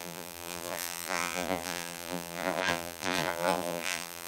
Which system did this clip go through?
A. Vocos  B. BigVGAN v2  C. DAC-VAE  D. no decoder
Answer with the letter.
B